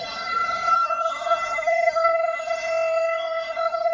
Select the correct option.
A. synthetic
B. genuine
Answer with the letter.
A